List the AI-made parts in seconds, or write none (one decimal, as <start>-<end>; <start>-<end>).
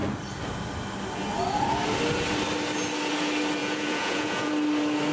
3.6-4.5